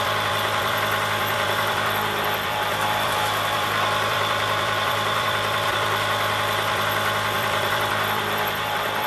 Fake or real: fake